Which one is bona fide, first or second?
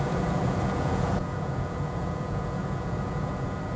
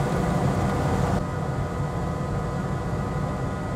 second